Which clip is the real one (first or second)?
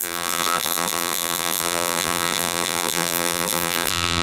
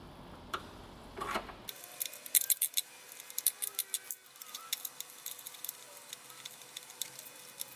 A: second